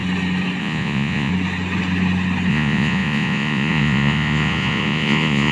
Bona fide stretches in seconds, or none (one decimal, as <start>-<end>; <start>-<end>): 0.0-0.6; 1.3-2.5